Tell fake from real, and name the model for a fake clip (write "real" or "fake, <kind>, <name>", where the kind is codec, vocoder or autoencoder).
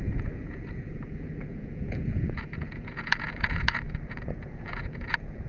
fake, vocoder, Vocos